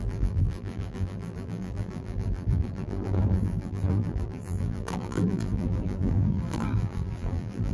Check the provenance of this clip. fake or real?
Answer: fake